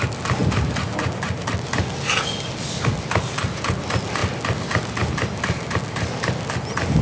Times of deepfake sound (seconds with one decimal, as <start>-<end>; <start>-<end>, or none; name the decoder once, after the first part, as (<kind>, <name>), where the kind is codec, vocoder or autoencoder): none